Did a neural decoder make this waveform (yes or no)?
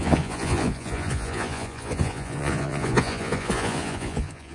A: yes